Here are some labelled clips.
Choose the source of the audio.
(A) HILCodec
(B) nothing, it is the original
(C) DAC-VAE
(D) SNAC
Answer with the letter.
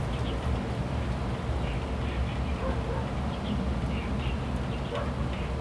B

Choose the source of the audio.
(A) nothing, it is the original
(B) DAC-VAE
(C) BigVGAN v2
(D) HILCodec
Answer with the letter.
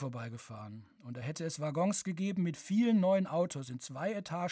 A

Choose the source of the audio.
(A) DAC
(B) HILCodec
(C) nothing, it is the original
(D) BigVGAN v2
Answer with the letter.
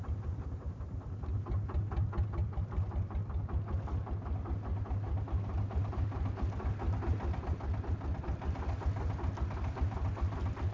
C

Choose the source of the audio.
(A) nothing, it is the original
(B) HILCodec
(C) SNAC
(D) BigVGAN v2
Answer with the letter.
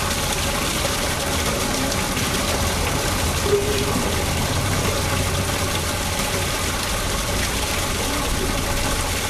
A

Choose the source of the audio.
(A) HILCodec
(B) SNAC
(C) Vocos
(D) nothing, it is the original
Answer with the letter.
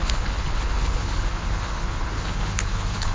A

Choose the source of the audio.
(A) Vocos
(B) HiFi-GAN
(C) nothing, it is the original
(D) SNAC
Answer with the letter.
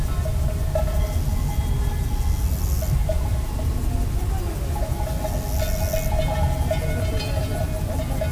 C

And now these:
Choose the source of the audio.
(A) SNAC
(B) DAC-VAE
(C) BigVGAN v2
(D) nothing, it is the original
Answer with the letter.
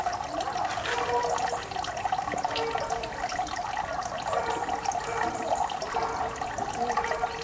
D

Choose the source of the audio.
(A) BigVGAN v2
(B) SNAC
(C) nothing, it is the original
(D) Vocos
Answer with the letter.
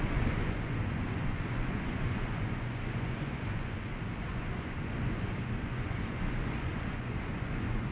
D